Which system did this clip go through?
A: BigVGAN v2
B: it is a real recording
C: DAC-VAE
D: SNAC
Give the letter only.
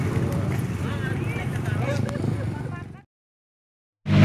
B